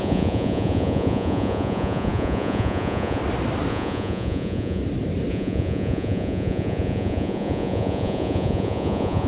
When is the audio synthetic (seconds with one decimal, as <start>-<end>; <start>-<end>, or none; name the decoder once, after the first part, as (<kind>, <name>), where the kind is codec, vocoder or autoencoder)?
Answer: 0.0-3.2 (vocoder, Vocos); 3.7-4.8; 5.3-9.3